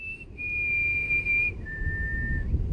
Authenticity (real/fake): real